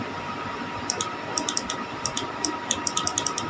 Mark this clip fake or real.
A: real